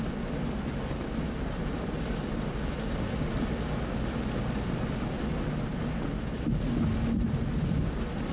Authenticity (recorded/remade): recorded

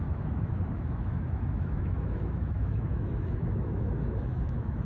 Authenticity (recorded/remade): remade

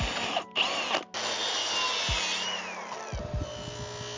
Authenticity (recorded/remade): recorded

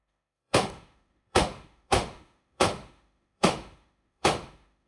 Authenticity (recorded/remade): remade